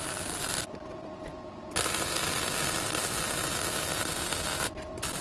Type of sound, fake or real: real